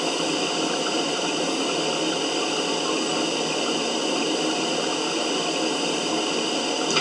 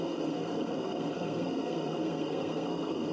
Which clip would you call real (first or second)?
first